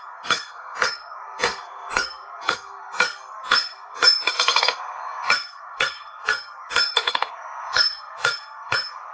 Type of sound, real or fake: fake